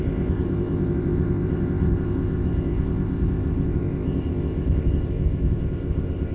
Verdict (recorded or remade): remade